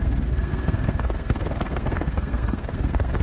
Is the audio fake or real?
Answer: fake